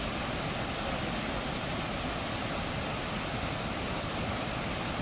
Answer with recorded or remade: recorded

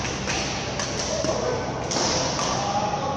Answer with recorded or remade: recorded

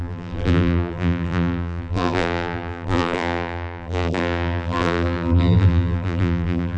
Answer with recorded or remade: remade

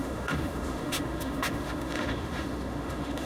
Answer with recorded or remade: remade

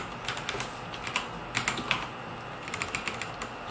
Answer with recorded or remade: recorded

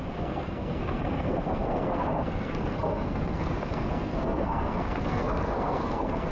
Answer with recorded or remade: remade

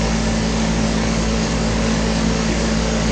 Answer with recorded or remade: remade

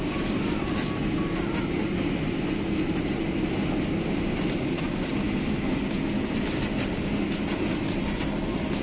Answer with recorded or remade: recorded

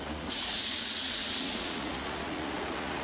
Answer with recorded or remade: remade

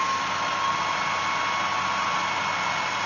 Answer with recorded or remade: recorded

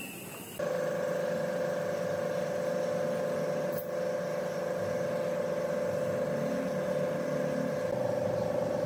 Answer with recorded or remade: recorded